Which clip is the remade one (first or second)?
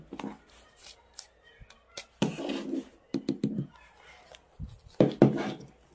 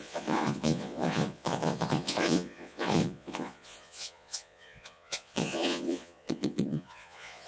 second